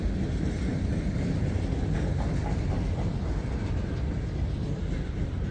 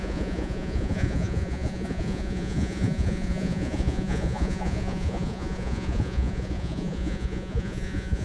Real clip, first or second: first